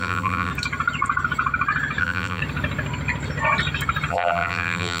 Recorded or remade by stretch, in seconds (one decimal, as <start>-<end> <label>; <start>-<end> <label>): 0.0-0.5 remade; 0.5-2.0 recorded; 2.0-2.4 remade; 2.4-4.1 recorded; 4.1-5.0 remade